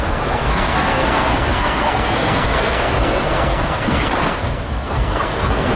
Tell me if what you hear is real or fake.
fake